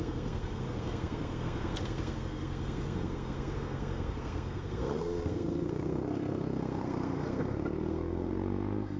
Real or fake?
fake